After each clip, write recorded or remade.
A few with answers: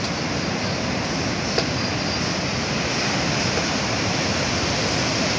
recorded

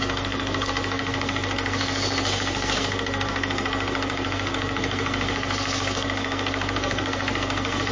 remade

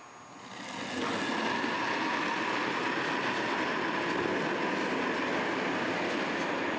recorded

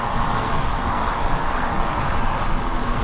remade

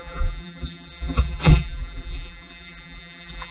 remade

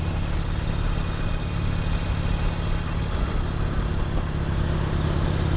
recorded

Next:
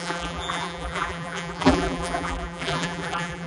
remade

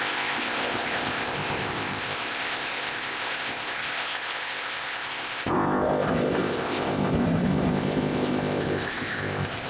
remade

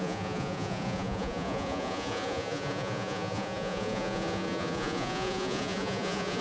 remade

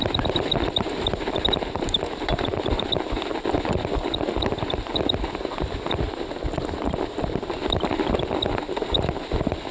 recorded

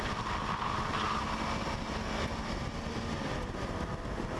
recorded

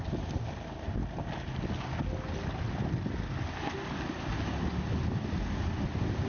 recorded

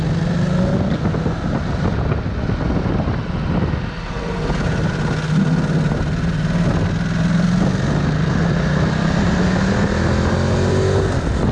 recorded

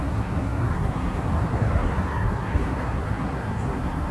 remade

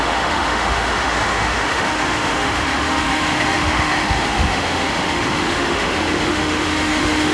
remade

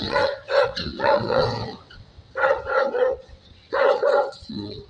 remade